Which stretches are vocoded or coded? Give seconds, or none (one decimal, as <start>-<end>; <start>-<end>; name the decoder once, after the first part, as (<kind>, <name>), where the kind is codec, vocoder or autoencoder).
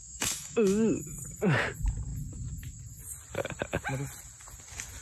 0.0-1.0 (autoencoder, DAC-VAE)